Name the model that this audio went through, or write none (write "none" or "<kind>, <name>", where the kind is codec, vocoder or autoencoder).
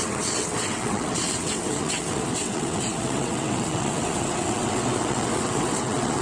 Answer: vocoder, WaveNeXt